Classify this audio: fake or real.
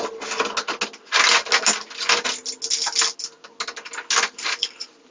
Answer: real